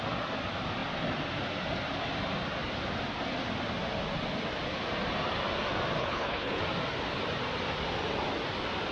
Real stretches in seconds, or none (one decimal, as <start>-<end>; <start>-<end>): 0.0-6.0; 6.6-8.9

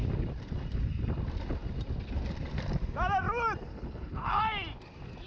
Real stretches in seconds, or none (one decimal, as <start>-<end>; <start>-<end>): 0.0-3.7; 4.4-5.3

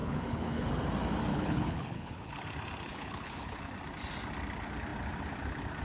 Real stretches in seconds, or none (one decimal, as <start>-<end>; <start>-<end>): 0.7-1.3; 2.4-2.9; 3.7-5.8